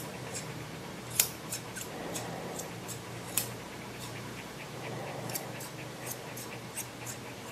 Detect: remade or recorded remade